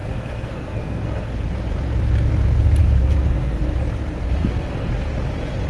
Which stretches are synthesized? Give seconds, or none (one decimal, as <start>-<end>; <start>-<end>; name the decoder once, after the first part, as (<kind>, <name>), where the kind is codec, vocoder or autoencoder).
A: 0.0-1.3 (codec, SNAC); 2.8-3.6; 4.4-4.9